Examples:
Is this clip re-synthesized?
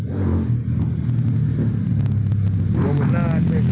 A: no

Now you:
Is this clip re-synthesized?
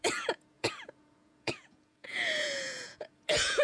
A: yes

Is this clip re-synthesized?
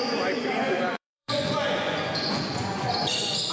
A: yes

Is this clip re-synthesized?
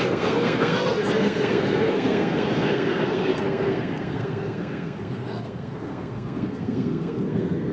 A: yes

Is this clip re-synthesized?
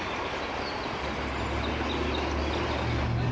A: no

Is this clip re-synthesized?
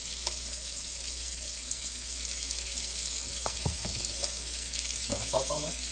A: yes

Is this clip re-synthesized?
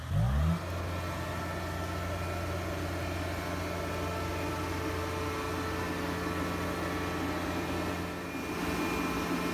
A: no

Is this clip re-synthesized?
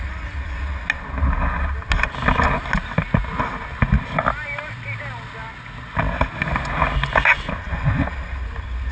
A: no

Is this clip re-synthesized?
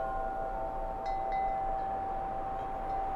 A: no